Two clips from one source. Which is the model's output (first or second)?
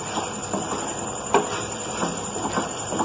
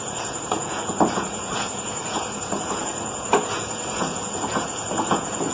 second